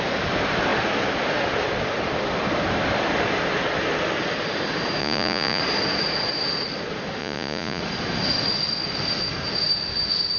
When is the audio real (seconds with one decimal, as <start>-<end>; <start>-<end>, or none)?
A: 0.0-5.0; 5.6-7.2; 7.8-10.4